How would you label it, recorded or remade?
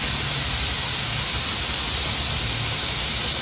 recorded